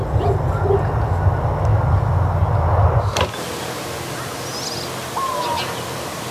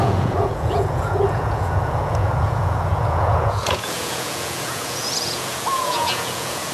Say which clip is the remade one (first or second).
second